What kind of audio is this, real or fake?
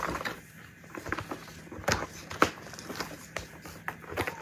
real